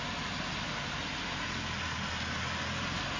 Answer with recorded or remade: recorded